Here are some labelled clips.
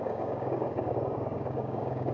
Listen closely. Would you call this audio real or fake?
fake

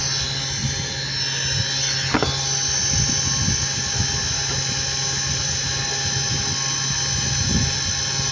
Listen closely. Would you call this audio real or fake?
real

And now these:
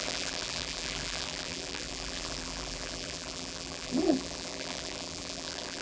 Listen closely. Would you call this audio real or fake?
fake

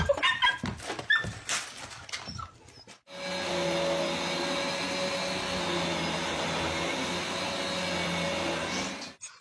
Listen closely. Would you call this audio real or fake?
real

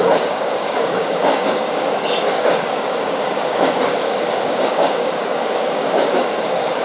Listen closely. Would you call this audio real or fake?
fake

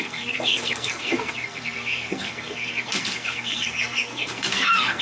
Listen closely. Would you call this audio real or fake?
fake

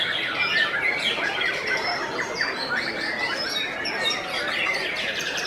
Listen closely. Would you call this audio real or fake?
fake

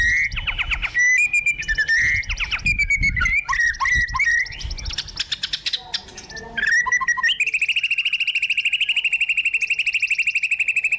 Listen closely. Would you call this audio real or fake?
real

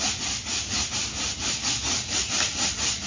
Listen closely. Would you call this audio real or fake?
real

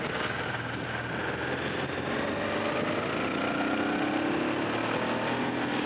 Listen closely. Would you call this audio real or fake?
real